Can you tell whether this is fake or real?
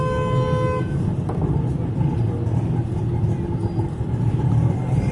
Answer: real